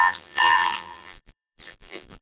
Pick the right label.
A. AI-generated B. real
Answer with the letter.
A